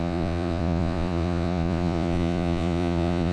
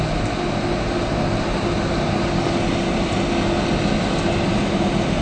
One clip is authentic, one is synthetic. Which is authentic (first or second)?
second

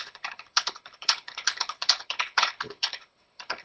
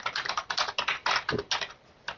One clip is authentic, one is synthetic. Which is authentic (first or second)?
second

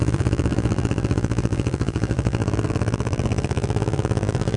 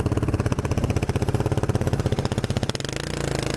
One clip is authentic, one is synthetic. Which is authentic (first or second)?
second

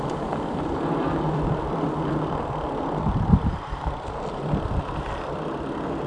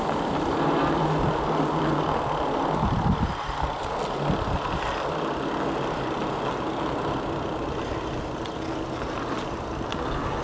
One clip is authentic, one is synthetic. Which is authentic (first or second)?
second